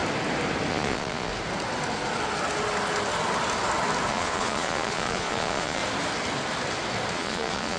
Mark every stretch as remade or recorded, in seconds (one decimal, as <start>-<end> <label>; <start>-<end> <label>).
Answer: 0.0-0.7 recorded; 0.7-1.3 remade; 1.3-4.1 recorded; 4.1-5.8 remade; 5.8-7.1 recorded; 7.1-7.8 remade